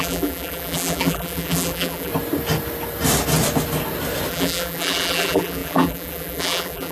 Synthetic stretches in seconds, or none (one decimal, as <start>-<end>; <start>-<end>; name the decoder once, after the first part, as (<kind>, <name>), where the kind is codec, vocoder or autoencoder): 0.0-2.1 (vocoder, BigVGAN v2); 4.3-6.9